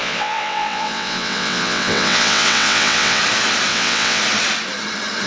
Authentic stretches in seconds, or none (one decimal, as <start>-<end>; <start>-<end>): 3.2-3.7; 4.2-5.3